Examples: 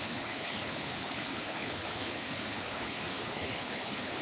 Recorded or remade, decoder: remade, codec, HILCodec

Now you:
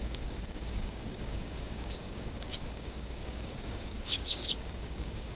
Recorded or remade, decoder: remade, codec, DAC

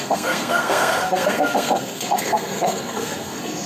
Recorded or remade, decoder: remade, codec, SNAC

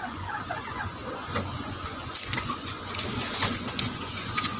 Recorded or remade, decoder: remade, vocoder, Vocos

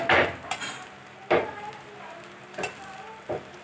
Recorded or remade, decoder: recorded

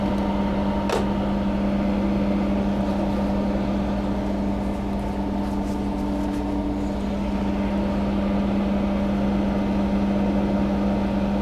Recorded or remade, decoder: recorded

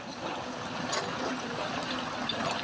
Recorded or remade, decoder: recorded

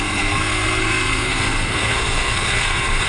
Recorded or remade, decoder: remade, codec, SNAC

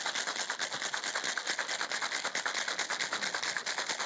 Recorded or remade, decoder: recorded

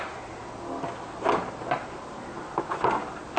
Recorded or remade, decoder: recorded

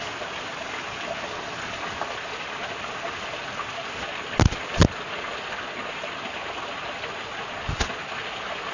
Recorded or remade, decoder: recorded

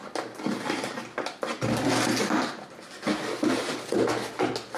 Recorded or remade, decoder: recorded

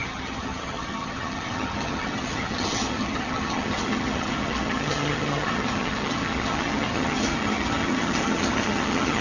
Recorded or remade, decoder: remade, vocoder, HiFi-GAN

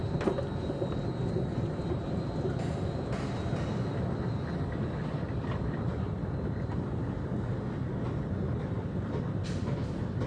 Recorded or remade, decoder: recorded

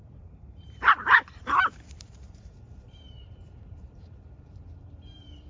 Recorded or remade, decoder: remade, vocoder, BigVGAN v2